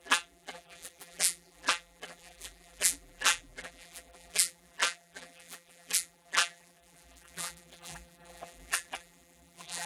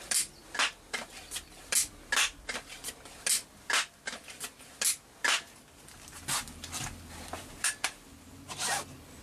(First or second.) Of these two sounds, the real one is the second